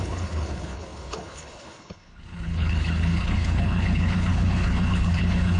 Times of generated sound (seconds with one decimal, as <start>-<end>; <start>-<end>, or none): 0.0-5.6